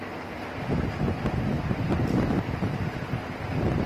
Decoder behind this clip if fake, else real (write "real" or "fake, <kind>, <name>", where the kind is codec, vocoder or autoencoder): real